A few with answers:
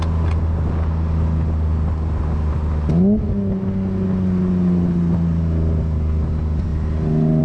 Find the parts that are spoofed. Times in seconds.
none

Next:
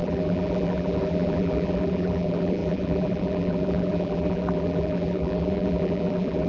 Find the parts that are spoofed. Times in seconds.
0.0-6.5 (vocoder, BigVGAN v2)

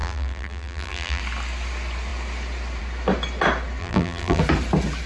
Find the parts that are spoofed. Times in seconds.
0.0-1.2 (vocoder, BigVGAN v2); 3.8-4.4

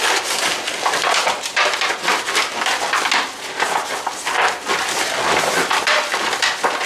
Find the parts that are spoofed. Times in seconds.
none

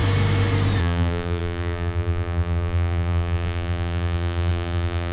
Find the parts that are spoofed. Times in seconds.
0.8-5.1 (vocoder, BigVGAN v2)